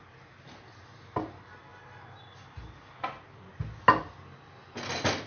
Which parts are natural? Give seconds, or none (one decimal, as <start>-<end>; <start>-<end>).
0.0-5.3